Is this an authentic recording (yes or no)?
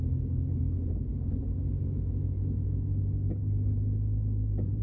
yes